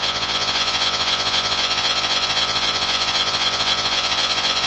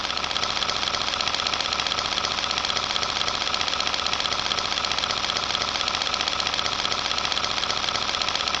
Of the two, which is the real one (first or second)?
second